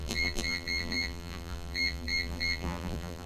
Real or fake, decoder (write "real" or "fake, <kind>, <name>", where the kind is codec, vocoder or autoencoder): fake, vocoder, BigVGAN v2